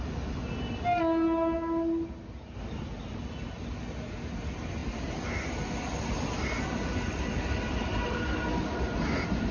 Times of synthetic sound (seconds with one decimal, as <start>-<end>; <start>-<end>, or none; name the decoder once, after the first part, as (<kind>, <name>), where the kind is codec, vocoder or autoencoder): none